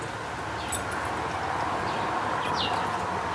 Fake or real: real